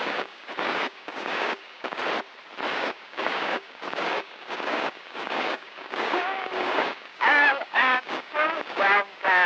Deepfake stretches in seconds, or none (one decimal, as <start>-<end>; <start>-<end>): 0.0-2.0; 2.7-9.5